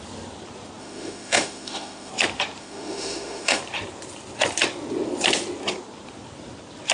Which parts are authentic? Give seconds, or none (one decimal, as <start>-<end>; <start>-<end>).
0.0-0.8; 2.1-2.6; 3.6-6.9